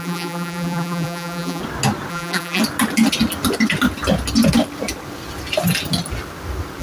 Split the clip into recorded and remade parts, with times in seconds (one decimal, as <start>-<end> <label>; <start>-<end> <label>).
0.0-1.6 remade; 1.6-2.1 recorded; 2.1-2.6 remade; 2.6-6.8 recorded